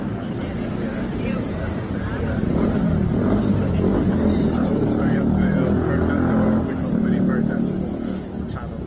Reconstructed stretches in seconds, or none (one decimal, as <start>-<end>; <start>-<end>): 0.9-5.5